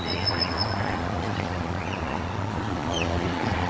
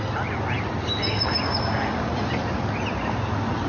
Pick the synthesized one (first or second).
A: first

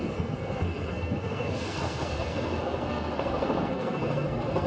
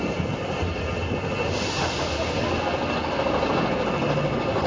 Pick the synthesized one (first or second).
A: first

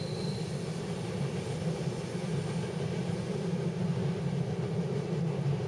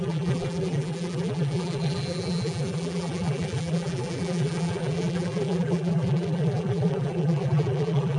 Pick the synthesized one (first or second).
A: second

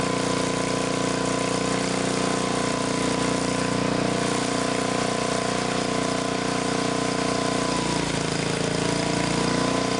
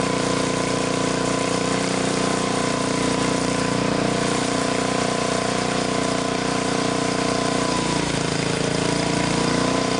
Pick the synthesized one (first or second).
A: second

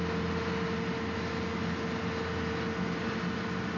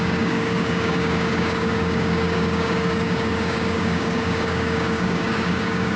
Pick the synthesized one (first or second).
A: second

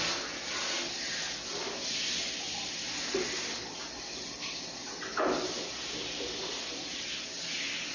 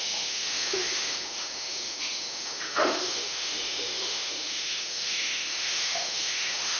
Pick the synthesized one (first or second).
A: second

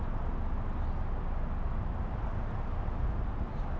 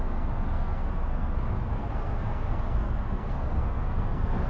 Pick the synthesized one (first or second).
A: second